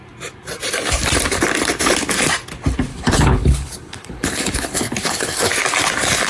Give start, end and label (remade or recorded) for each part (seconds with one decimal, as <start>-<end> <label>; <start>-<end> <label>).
0.0-2.9 recorded; 2.9-5.5 remade; 5.5-6.3 recorded